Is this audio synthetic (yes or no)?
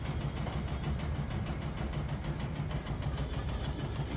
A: no